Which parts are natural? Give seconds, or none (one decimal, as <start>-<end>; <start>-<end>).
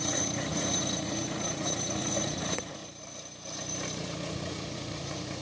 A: 2.8-4.0